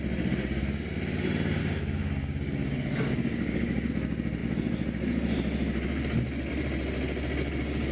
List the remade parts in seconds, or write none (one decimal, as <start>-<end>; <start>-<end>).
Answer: 1.6-3.9

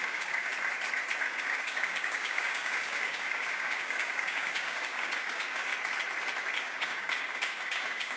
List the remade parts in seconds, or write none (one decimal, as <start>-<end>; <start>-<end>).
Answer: 0.0-0.5; 1.2-5.7; 6.6-8.2

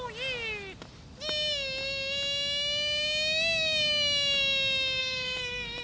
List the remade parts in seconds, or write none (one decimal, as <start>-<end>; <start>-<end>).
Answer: 5.0-5.8

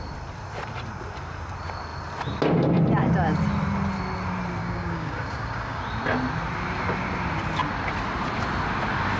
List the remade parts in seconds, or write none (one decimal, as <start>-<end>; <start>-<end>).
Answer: 4.6-5.8

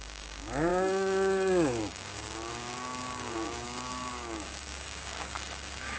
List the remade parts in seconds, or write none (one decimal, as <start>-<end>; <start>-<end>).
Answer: 0.0-6.0

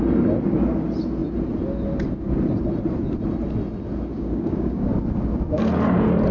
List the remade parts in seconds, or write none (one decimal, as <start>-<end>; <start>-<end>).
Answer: 4.1-4.9

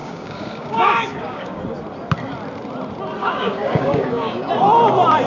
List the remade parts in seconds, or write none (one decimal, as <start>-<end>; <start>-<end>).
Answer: 0.0-1.6; 3.2-4.5

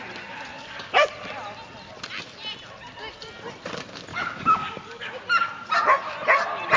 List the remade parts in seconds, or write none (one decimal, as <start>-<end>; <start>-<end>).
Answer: 0.5-1.1; 4.1-5.2